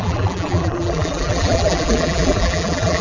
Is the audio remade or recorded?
remade